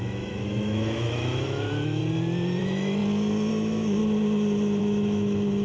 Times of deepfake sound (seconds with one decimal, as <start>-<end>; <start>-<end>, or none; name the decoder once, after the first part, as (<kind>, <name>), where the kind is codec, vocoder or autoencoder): 0.0-2.0 (autoencoder, DAC-VAE); 2.6-3.0; 3.5-4.0; 4.8-5.6